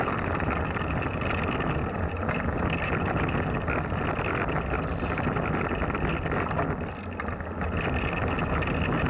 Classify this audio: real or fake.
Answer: real